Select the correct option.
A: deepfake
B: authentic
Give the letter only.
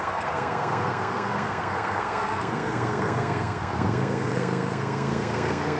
A